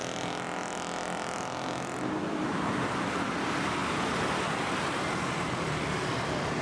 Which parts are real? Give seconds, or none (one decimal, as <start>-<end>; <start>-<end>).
0.0-2.2; 3.8-4.9